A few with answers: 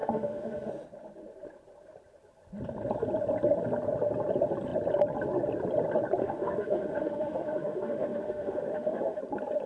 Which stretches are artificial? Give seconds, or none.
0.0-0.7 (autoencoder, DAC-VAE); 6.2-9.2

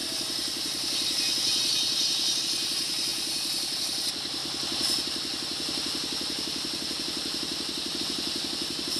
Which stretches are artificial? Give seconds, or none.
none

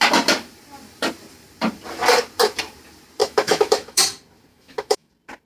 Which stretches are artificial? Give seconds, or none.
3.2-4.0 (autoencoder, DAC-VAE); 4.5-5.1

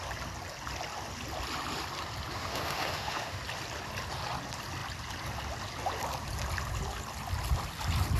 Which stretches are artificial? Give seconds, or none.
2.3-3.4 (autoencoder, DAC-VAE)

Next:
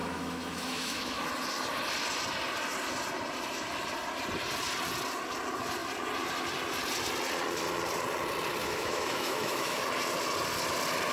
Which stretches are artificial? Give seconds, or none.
0.0-1.3 (autoencoder, DAC-VAE); 8.6-9.8

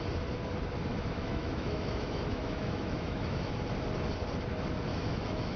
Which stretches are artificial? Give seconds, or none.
0.9-3.6 (autoencoder, DAC-VAE); 4.9-5.6